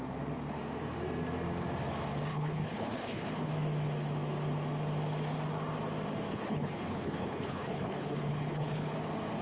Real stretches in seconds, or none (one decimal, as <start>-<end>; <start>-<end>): 0.0-2.3; 3.5-6.3; 8.9-9.4

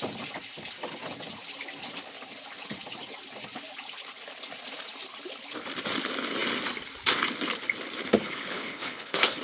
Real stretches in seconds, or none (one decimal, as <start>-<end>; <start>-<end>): 0.0-8.2

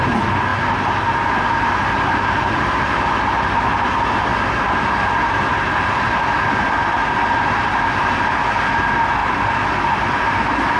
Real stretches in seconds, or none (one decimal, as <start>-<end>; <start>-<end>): 0.0-10.8

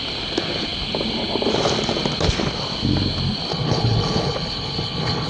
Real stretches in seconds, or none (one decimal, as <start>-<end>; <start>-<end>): 0.0-3.5

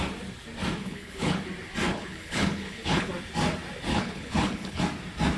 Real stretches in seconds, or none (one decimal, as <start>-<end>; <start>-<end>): 0.0-0.8; 1.4-1.9; 3.1-3.9; 4.8-5.4

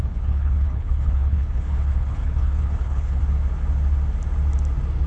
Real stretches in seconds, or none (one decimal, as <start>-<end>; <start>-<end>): 3.2-5.1

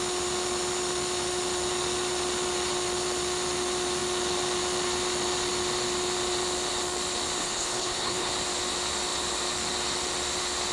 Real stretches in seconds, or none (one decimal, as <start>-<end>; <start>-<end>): 0.0-7.4; 8.3-10.7

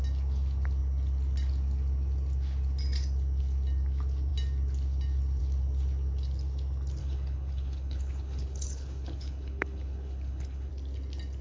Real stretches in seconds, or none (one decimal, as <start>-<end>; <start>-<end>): 0.0-7.0; 10.7-11.4